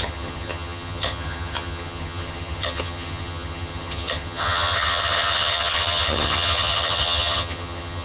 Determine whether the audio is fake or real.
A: fake